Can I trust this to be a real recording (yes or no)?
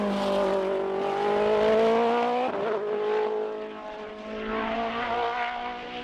yes